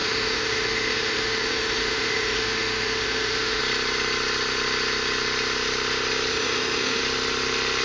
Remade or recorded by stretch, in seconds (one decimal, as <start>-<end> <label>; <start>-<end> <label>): 0.0-3.6 remade; 3.6-6.3 recorded; 6.3-7.0 remade; 7.0-7.8 recorded